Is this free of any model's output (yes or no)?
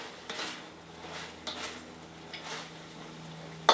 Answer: yes